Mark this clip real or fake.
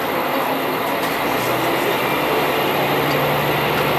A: real